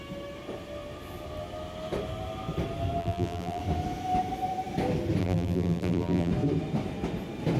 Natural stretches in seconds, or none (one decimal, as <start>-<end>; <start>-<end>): 0.0-3.0; 3.6-5.2; 6.3-7.6

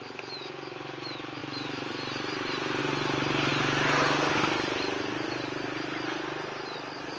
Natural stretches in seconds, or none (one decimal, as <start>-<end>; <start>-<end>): 0.0-1.4; 2.8-7.2